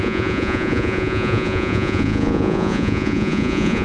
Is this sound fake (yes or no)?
yes